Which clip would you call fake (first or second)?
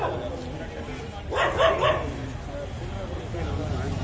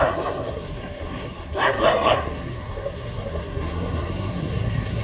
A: second